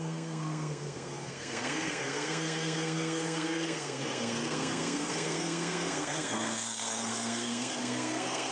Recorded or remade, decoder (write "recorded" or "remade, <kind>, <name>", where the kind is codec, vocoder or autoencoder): remade, codec, SNAC